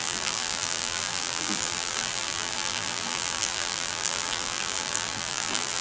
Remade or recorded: remade